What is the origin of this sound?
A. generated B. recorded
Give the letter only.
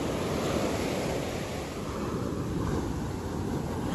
A